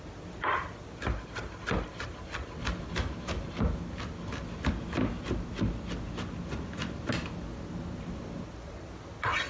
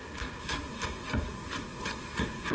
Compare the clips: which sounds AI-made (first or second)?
second